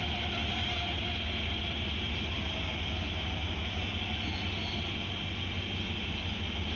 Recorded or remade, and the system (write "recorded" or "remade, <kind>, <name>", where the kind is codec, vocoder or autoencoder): recorded